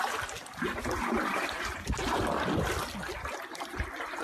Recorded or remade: recorded